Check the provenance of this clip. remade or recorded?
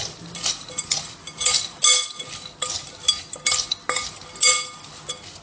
recorded